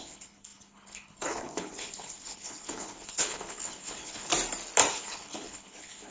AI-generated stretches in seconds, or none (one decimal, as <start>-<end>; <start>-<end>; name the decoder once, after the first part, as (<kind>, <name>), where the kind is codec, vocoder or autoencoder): 0.0-4.3 (codec, HILCodec); 4.9-6.1